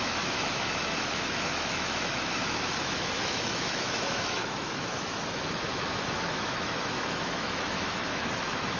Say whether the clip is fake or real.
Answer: fake